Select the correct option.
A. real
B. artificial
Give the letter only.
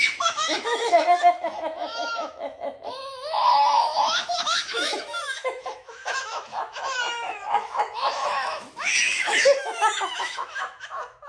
B